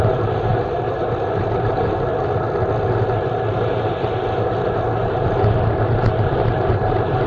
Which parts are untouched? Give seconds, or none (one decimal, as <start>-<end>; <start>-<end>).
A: 2.1-6.5